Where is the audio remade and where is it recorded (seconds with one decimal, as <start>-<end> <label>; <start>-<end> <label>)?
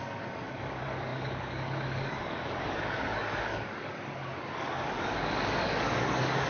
0.0-6.5 remade